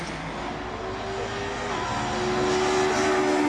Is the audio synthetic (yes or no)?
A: no